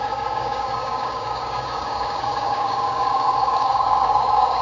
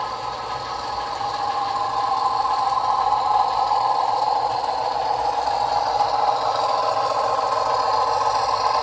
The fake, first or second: first